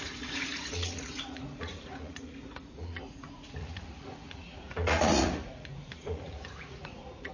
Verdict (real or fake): fake